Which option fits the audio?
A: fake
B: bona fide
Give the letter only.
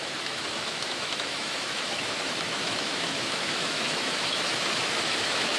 A